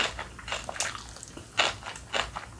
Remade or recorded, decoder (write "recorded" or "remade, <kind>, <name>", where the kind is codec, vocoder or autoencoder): recorded